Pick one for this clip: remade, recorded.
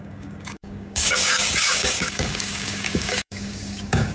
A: remade